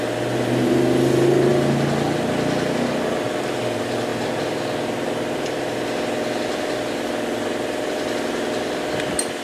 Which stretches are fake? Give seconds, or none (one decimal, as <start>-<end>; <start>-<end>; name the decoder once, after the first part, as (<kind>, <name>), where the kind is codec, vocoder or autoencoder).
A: none